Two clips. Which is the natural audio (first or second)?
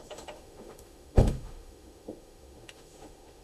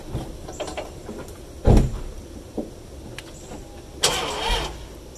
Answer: second